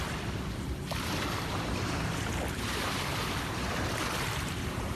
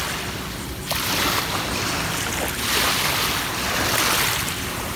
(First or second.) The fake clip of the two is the first